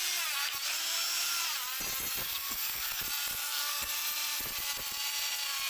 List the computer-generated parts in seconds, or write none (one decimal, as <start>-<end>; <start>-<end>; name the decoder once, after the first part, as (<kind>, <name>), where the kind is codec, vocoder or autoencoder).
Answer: 2.2-3.0 (codec, SNAC); 3.4-3.9